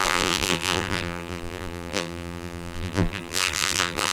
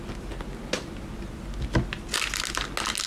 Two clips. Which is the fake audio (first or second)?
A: first